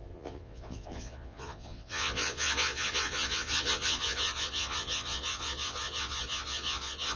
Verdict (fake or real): fake